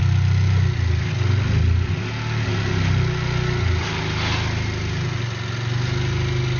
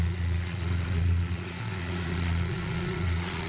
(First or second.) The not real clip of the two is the second